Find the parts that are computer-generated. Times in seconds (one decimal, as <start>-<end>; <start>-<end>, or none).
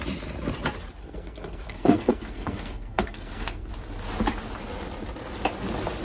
1.0-3.7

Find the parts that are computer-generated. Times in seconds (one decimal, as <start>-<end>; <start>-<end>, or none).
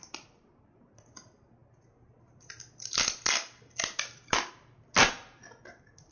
none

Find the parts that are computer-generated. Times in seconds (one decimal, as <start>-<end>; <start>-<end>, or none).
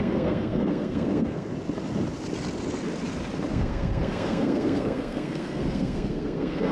0.0-1.5; 3.5-6.7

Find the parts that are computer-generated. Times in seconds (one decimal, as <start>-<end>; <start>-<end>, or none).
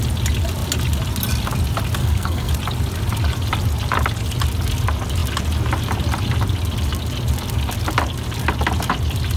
2.0-2.5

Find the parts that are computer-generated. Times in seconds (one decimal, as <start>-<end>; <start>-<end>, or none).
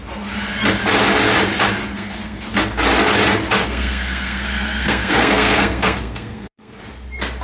1.9-2.5; 3.6-6.8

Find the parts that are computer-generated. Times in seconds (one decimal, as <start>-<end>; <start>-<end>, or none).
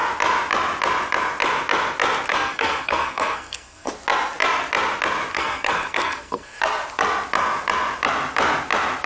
2.3-3.9; 5.3-6.6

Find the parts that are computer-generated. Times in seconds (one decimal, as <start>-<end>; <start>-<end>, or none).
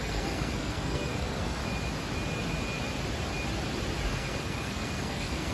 0.0-1.6; 4.1-5.5